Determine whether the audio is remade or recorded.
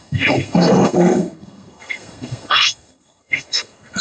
remade